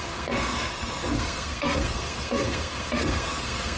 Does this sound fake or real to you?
fake